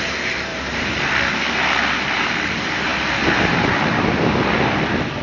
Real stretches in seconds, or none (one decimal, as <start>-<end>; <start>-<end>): 0.0-0.5; 1.3-5.2